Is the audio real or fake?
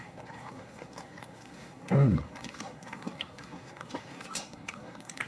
fake